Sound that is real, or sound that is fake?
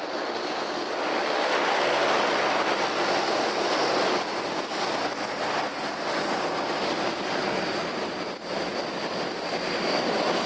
real